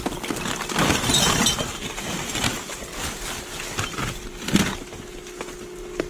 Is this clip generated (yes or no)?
no